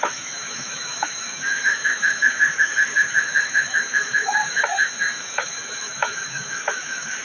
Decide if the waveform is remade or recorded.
remade